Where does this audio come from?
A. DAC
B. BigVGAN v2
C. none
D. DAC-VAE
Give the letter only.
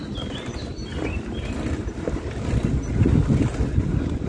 C